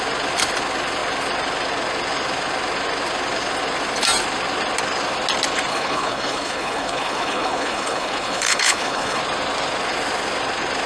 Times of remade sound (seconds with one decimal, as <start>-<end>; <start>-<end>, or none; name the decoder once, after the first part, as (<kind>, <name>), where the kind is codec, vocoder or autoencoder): 5.7-9.2 (codec, HILCodec)